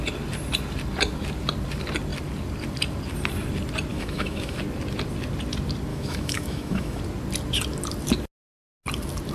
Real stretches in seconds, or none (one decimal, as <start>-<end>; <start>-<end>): 0.0-3.9; 4.6-5.9; 7.0-9.3

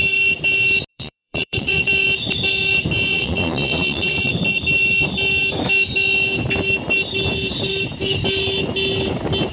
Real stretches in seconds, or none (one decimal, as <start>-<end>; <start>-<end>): 0.0-0.9; 1.9-3.1; 4.3-9.5

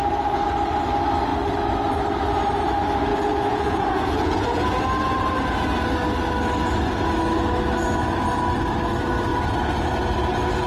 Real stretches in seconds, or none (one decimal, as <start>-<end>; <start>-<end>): 0.0-3.1; 4.8-10.7

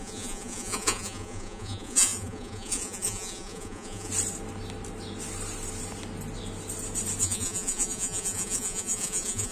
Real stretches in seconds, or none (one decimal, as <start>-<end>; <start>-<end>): 4.1-7.2

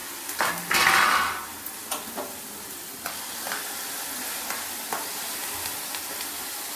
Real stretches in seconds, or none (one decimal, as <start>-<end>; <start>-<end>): 0.0-6.8

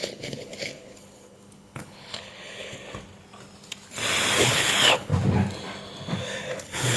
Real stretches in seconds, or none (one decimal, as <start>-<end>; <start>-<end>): 2.8-4.4; 5.1-6.6

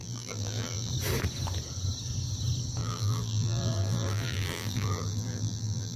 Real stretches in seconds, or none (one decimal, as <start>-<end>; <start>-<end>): 0.9-2.8

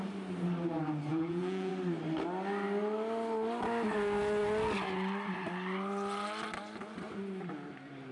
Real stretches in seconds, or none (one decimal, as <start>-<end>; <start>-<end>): 0.0-1.1; 1.7-8.1